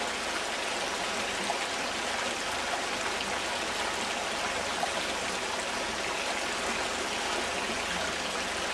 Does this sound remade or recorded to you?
recorded